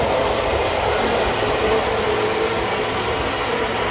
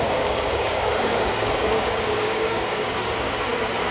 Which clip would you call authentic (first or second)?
first